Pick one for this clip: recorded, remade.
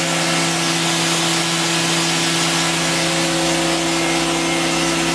recorded